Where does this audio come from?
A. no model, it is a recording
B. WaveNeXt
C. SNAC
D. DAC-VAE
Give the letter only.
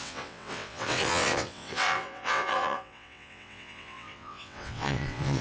B